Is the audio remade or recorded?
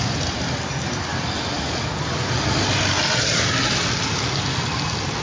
recorded